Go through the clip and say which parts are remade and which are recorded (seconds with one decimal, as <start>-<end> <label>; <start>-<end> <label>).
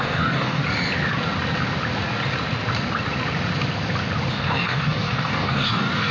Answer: 0.0-0.6 remade; 0.6-4.3 recorded; 4.3-6.1 remade